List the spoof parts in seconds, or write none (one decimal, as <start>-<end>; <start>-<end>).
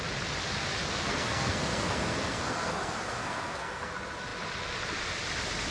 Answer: 0.8-3.9